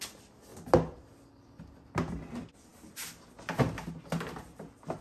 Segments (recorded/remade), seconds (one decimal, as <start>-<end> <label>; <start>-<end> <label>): 0.0-5.0 recorded